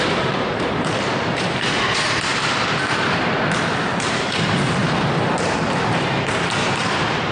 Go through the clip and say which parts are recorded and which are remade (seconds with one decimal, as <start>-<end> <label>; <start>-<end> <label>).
0.0-2.3 remade; 2.3-3.7 recorded; 3.7-4.8 remade; 4.8-6.8 recorded; 6.8-7.3 remade